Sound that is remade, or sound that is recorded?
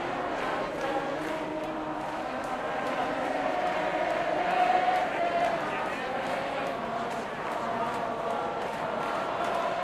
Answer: recorded